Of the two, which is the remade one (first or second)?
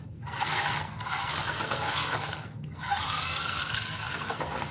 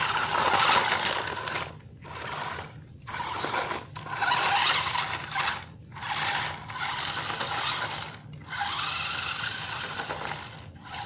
first